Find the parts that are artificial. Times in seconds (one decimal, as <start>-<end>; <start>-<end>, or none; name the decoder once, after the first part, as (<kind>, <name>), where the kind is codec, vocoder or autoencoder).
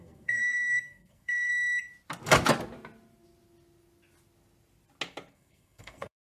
0.0-1.5 (codec, SNAC); 5.3-6.4